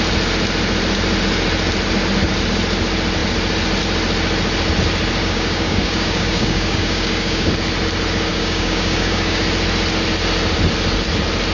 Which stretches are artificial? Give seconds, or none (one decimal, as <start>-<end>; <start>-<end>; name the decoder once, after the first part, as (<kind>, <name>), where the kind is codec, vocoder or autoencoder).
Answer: 5.2-7.5 (codec, DAC); 8.3-9.4